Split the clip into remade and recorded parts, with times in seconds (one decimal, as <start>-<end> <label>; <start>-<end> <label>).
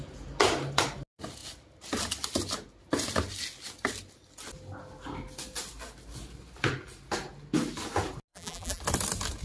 0.0-8.3 recorded; 8.3-8.8 remade; 8.8-9.4 recorded